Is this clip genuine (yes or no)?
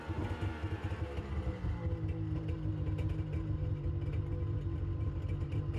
yes